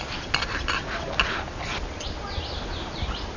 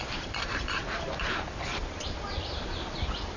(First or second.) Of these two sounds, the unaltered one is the first